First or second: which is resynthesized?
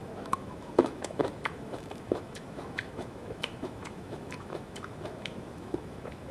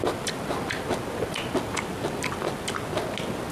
first